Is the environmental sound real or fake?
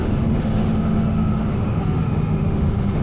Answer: fake